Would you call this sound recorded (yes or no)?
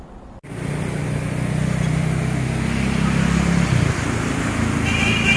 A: yes